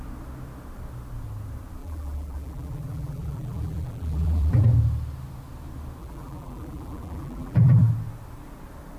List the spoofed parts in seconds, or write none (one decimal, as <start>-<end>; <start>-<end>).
1.8-4.6; 6.0-7.9